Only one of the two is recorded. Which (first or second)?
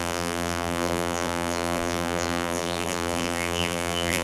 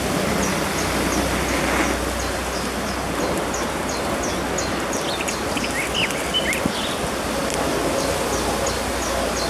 second